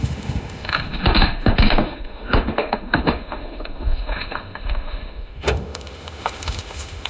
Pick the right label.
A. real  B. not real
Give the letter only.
B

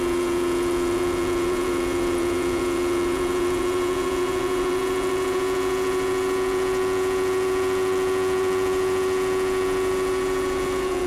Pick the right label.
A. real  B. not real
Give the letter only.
B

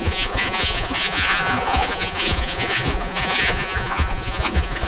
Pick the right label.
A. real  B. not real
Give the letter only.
B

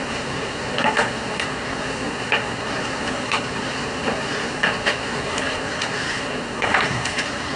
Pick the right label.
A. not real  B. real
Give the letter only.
A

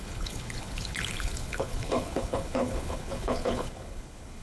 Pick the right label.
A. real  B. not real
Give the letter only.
B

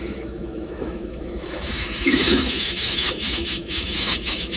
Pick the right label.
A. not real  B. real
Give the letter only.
A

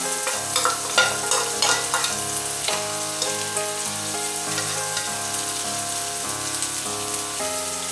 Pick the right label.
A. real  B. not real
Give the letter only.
A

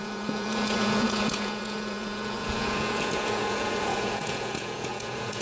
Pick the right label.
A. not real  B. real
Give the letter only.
A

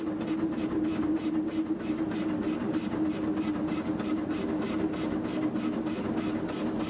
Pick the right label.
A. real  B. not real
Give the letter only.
A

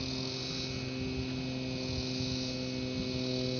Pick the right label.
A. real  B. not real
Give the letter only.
A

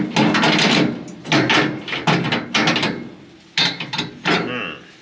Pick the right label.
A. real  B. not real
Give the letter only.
A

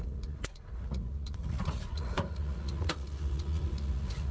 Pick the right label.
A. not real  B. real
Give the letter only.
A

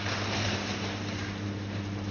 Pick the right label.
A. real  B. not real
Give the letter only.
A